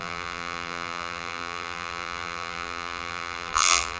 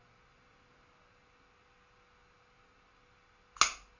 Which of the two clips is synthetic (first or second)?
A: first